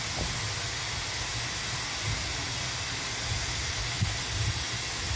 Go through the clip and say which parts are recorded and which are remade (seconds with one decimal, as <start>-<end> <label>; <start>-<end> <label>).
0.0-5.2 recorded